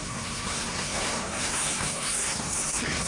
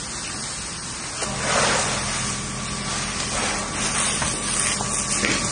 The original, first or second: second